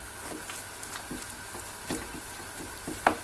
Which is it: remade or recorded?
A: recorded